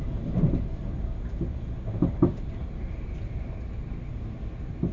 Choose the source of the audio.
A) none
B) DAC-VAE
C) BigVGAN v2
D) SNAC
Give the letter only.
A